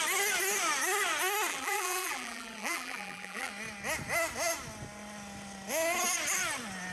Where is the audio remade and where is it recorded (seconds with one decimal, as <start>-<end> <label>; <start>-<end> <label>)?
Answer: 0.0-1.5 recorded; 1.5-3.5 remade; 3.5-6.9 recorded